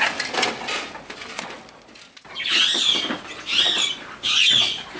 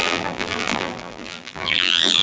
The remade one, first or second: second